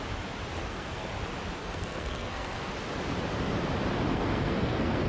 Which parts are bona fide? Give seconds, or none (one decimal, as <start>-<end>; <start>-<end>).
0.0-0.6; 1.1-1.6; 2.7-4.1